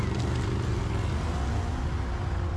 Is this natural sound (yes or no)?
yes